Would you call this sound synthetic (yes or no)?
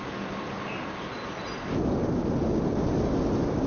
no